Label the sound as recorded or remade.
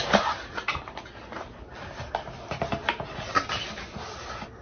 recorded